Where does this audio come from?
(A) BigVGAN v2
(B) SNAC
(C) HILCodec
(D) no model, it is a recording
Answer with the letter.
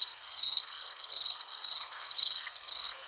B